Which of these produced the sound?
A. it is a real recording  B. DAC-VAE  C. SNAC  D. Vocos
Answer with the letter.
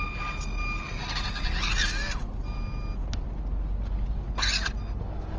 A